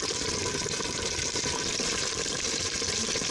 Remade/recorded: remade